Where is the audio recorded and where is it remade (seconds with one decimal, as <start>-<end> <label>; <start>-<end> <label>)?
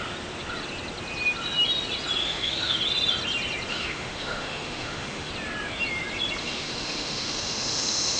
0.0-2.2 recorded; 2.2-2.8 remade; 2.8-3.7 recorded; 3.7-5.3 remade; 5.3-6.4 recorded; 6.4-8.2 remade